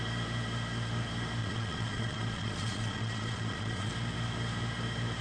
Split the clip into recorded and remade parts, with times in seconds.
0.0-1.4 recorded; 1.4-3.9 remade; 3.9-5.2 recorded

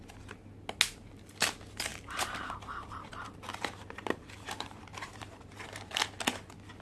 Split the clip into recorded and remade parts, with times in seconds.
0.0-1.9 recorded; 1.9-6.0 remade; 6.0-6.8 recorded

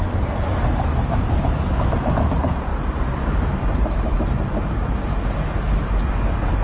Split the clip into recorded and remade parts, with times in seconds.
0.0-2.7 recorded; 2.7-5.1 remade; 5.1-6.6 recorded

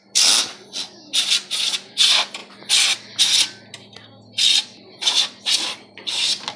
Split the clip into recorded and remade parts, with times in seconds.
0.0-6.6 recorded

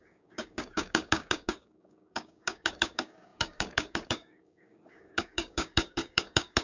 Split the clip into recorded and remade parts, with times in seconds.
0.0-6.6 remade

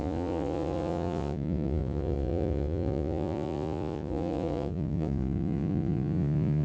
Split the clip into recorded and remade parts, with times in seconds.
0.0-6.6 remade